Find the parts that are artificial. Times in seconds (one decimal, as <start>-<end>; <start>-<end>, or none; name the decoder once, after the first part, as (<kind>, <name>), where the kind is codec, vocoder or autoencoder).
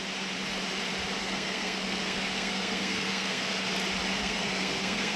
1.2-3.7 (codec, SNAC); 4.2-5.2